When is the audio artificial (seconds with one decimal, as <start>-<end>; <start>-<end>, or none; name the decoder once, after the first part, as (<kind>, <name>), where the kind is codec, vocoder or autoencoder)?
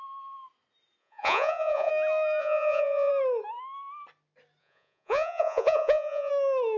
1.0-1.9 (vocoder, Vocos); 2.4-3.1; 4.6-6.3